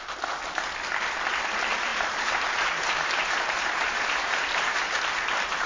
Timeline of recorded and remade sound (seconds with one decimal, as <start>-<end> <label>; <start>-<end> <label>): 0.0-1.9 recorded; 1.9-4.8 remade; 4.8-5.7 recorded